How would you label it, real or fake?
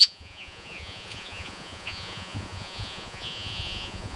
fake